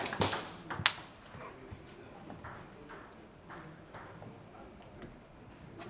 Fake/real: real